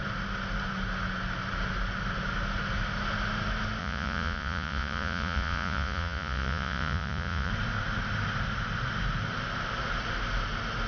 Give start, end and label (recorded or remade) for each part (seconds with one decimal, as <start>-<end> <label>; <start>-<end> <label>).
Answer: 0.0-3.8 recorded; 3.8-7.5 remade; 7.5-10.9 recorded